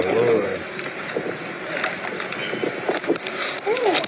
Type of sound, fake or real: real